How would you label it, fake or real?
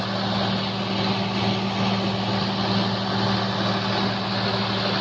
real